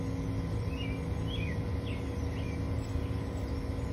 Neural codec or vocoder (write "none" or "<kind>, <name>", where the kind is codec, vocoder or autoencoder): none